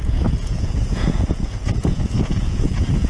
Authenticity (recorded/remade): remade